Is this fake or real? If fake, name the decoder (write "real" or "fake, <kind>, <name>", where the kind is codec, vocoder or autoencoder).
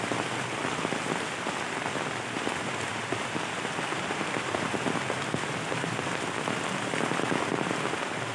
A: real